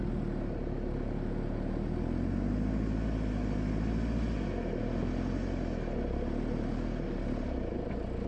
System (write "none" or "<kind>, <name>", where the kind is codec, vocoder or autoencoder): none